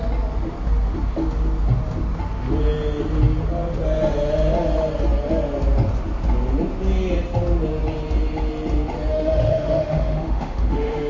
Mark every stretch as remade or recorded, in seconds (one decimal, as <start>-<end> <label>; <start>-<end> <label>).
0.0-9.1 recorded; 9.1-11.1 remade